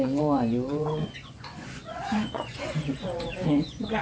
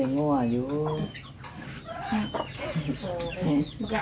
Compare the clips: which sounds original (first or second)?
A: second